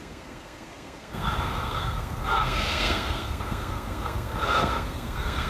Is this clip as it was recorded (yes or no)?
no